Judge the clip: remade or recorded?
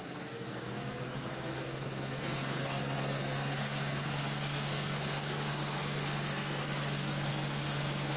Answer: remade